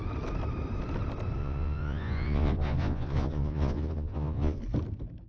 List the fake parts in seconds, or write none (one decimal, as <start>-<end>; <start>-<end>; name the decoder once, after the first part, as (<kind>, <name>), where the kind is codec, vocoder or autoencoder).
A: 1.4-4.6 (vocoder, Vocos)